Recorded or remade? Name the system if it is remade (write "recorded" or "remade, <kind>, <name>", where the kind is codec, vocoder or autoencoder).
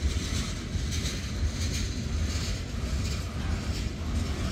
recorded